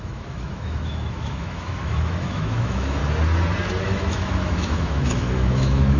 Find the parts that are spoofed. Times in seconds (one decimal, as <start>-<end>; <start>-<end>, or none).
0.0-3.0; 3.8-6.0